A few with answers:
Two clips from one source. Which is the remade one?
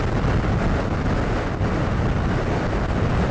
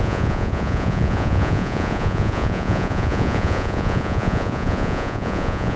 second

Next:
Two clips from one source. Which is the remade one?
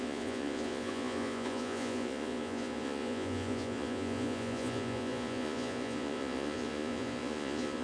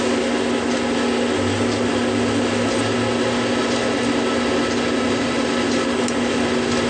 first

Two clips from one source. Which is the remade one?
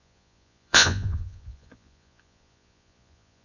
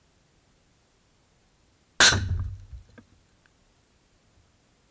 first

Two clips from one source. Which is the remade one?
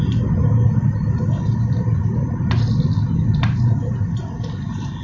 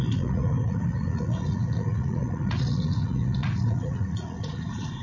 second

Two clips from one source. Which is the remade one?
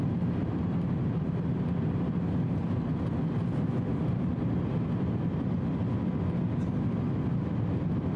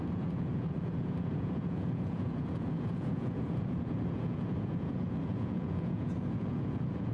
second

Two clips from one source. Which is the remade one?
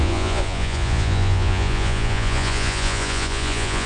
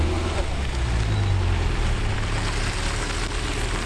first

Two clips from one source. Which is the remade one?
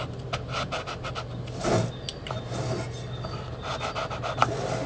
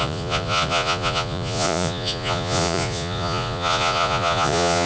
second